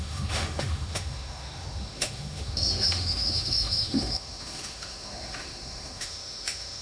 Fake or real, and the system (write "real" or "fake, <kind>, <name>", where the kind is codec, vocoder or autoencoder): fake, autoencoder, DAC-VAE